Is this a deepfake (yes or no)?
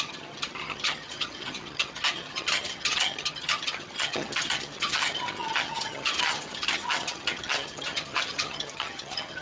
yes